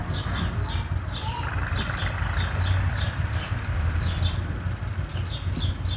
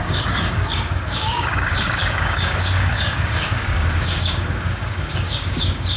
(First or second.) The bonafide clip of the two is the first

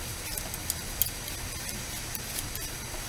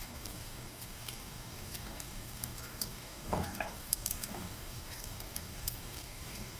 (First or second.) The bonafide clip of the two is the first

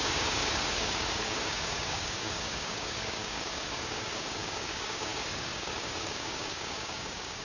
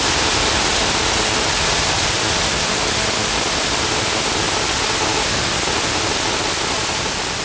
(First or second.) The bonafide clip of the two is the second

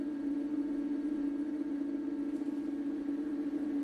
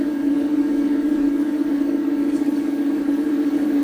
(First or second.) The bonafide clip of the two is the first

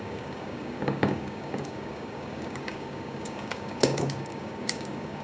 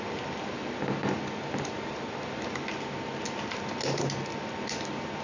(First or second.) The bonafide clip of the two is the second